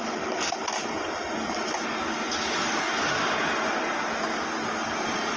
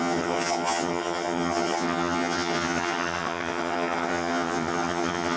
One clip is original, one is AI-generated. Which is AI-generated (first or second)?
second